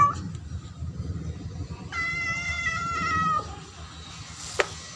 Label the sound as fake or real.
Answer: real